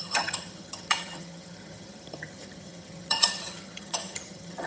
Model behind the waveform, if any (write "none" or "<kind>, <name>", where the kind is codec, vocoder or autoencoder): vocoder, HiFi-GAN